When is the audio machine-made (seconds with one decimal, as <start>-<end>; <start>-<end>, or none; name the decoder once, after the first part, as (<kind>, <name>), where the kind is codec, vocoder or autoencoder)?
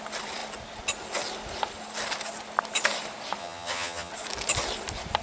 3.4-4.1 (vocoder, HiFi-GAN)